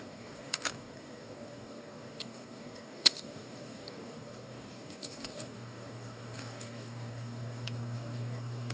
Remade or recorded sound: remade